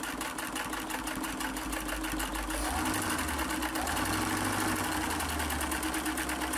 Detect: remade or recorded recorded